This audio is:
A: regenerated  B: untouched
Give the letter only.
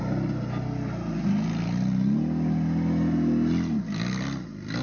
B